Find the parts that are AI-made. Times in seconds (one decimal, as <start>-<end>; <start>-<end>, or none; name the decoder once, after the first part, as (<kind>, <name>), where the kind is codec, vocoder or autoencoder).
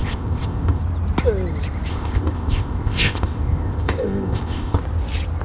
0.0-0.8 (codec, ZipCodec); 1.9-4.8